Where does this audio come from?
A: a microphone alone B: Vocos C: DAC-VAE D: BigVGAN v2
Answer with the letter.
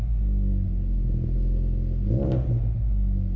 A